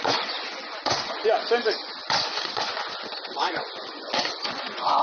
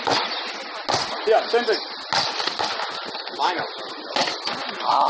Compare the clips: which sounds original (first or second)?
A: second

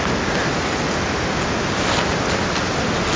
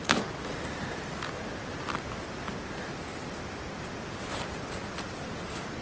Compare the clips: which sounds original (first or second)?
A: first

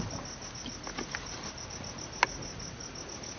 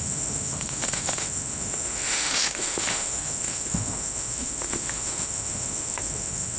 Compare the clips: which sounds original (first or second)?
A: first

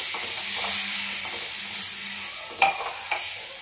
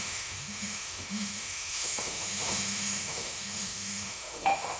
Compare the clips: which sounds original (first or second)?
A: first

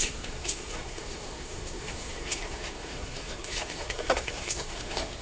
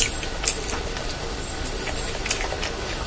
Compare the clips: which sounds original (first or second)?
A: second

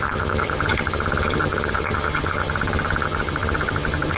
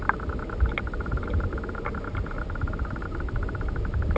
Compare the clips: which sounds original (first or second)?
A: second